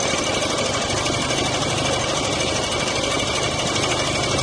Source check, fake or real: real